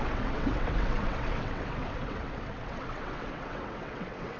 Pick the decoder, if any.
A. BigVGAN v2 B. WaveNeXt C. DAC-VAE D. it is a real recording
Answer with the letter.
B